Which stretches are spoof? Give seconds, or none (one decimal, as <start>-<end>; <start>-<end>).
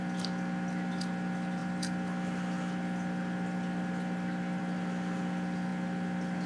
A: none